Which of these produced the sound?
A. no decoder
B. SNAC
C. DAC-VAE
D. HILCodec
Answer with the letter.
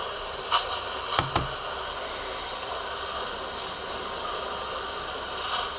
A